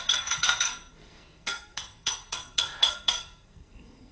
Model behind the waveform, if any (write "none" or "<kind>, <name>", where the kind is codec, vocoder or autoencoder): codec, SNAC